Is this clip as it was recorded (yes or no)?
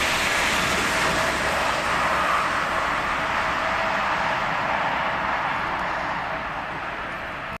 yes